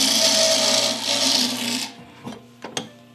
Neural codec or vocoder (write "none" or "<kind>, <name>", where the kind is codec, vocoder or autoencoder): none